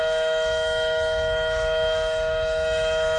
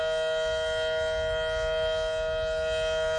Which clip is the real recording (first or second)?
second